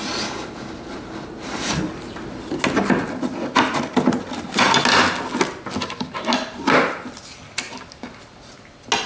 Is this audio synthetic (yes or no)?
no